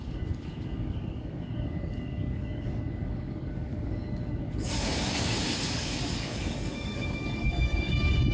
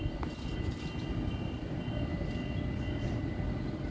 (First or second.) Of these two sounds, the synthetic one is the first